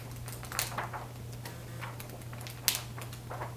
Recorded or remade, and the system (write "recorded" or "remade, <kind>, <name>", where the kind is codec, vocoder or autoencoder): recorded